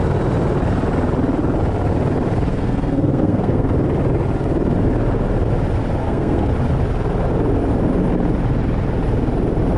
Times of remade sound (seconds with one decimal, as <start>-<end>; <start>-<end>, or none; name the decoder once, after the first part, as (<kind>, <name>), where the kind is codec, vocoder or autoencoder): 2.5-3.7 (codec, SNAC); 6.0-6.5